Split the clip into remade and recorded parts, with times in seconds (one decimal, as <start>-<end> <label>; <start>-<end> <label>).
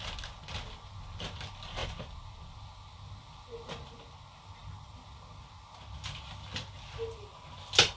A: 0.0-8.0 recorded